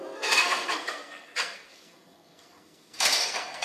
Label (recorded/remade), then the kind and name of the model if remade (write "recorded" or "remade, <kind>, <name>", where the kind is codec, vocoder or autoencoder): remade, codec, SNAC